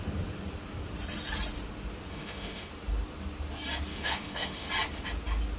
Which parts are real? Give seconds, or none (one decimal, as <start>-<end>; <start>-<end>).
0.0-2.1; 2.7-3.9; 4.7-5.6